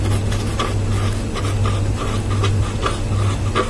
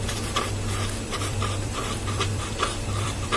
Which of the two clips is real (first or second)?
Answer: first